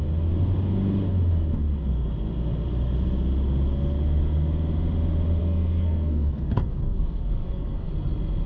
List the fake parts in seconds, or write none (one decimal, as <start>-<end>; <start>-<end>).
5.4-7.9